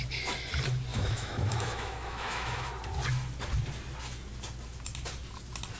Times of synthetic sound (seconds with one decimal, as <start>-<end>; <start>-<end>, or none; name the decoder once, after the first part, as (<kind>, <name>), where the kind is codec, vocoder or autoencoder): 0.9-2.7 (autoencoder, DAC-VAE)